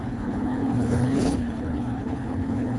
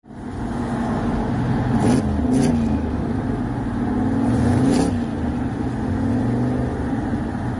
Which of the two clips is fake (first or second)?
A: first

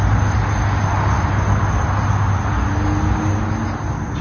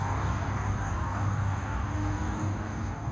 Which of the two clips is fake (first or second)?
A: second